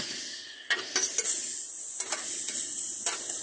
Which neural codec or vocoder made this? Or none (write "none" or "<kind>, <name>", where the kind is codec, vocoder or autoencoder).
none